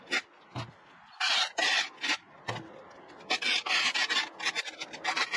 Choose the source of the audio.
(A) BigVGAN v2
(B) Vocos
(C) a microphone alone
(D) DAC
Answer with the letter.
C